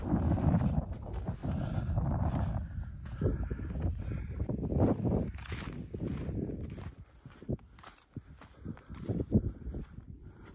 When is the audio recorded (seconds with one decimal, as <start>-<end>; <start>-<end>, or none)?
1.4-6.0